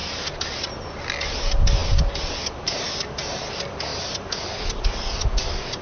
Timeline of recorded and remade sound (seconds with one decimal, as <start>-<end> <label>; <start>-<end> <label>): 0.0-5.8 recorded